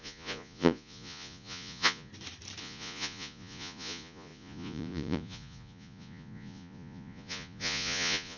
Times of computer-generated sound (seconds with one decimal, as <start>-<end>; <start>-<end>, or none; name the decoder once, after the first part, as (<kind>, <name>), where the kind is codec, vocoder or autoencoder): 0.0-2.1 (vocoder, Vocos); 2.6-8.4